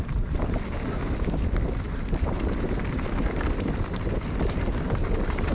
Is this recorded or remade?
recorded